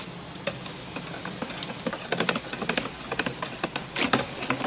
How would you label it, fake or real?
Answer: real